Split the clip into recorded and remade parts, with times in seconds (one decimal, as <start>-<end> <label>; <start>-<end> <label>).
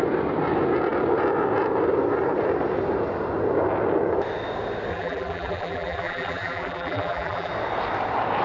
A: 0.0-4.9 recorded; 4.9-7.5 remade; 7.5-8.4 recorded